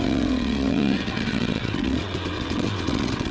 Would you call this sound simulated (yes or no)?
yes